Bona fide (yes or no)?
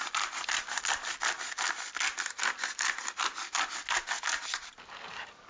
yes